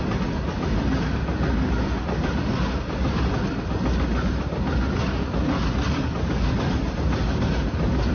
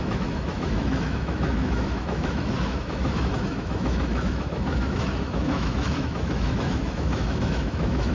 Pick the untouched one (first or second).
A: first